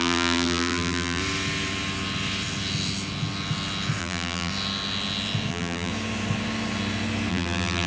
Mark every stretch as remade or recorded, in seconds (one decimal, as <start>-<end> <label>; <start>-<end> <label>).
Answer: 0.0-1.2 remade; 1.2-4.0 recorded; 4.0-4.5 remade; 4.5-5.5 recorded; 5.5-5.9 remade; 5.9-7.3 recorded; 7.3-7.9 remade